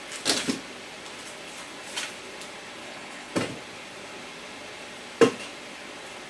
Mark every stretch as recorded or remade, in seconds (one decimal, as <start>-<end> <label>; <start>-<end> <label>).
0.0-2.8 recorded; 2.8-3.3 remade; 3.3-6.3 recorded